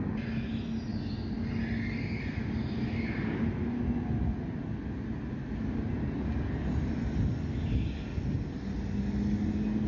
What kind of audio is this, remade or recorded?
recorded